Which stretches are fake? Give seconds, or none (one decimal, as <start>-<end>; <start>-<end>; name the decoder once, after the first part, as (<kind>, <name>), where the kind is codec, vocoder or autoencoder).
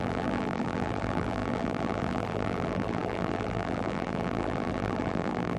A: 0.0-5.6 (vocoder, BigVGAN v2)